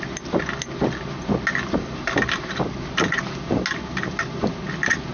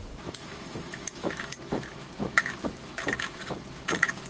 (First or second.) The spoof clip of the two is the second